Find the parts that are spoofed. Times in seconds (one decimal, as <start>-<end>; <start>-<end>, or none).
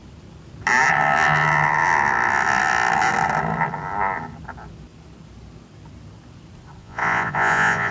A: 6.8-7.9